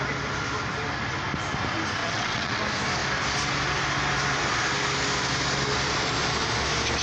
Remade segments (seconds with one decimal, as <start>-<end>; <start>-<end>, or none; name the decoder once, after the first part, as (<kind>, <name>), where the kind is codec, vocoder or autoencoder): 2.0-2.6 (vocoder, WaveNeXt)